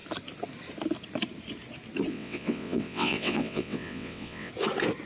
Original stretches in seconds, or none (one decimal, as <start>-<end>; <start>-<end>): 0.0-2.1; 4.5-5.1